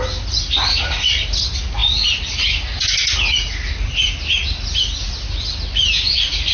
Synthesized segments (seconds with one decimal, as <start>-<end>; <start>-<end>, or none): none